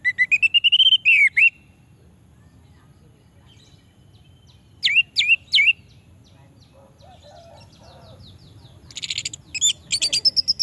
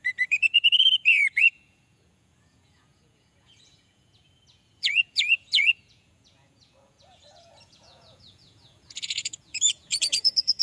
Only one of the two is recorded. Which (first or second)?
first